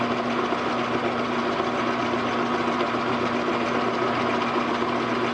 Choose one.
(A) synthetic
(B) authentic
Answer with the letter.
B